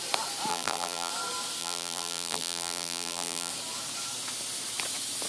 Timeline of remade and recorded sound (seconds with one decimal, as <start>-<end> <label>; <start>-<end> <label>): 0.0-0.5 recorded; 0.5-1.1 remade; 1.1-1.6 recorded; 1.6-3.5 remade; 3.5-5.3 recorded